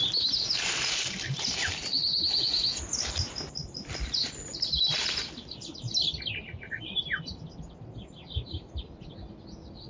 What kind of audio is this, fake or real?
real